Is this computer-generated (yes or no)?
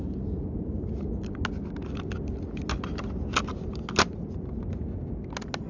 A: no